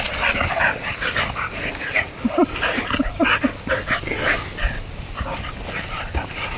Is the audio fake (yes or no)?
no